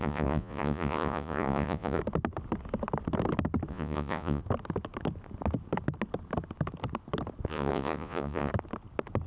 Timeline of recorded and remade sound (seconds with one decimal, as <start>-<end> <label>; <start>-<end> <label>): 0.0-2.0 remade; 2.0-3.7 recorded; 3.7-4.4 remade; 4.4-7.5 recorded; 7.5-8.5 remade; 8.5-9.3 recorded